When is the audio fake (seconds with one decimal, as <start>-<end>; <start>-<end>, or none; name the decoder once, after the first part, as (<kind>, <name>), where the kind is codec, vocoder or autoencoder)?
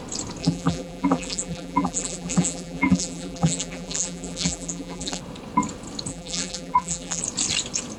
0.4-5.2 (vocoder, BigVGAN v2); 6.1-7.2